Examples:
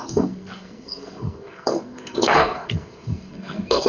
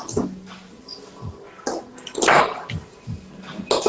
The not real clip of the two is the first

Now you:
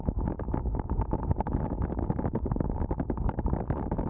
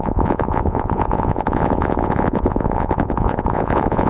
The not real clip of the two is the second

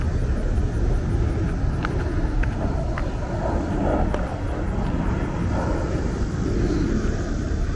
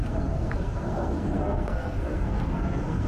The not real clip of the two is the second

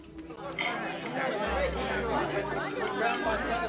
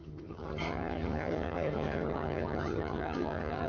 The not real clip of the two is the second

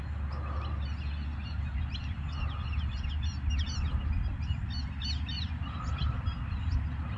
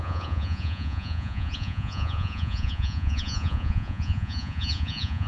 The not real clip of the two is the second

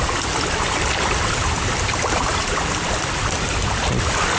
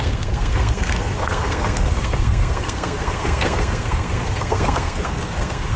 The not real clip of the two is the second